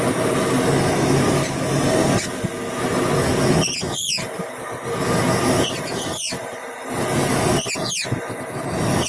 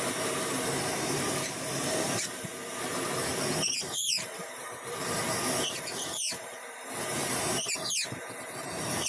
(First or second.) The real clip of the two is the first